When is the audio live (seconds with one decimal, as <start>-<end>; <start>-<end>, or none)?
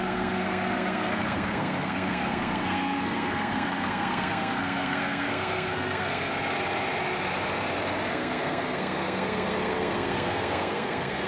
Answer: 6.3-8.1